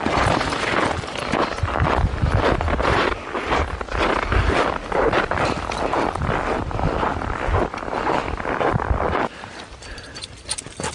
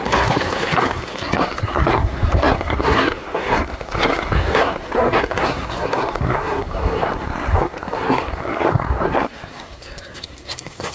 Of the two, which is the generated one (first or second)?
second